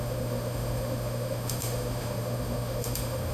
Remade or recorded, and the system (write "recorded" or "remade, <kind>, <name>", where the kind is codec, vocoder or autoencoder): remade, autoencoder, DAC-VAE